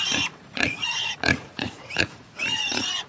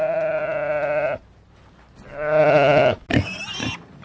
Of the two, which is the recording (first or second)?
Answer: second